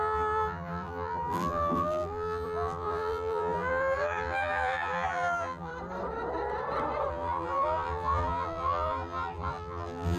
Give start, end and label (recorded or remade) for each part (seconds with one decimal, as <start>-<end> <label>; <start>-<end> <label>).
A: 0.0-5.7 remade; 5.7-7.1 recorded; 7.1-10.2 remade